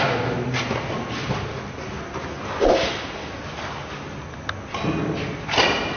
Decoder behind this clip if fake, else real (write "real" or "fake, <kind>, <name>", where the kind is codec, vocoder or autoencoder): real